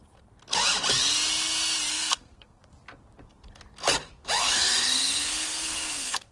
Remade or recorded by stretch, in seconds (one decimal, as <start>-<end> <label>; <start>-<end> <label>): 0.0-1.9 recorded; 1.9-2.6 remade; 2.6-4.4 recorded; 4.4-6.3 remade